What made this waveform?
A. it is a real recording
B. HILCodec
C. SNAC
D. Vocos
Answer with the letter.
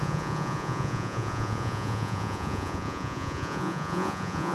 D